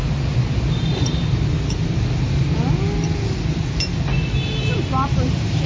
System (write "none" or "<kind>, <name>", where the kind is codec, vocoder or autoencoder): none